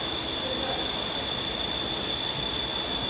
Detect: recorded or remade recorded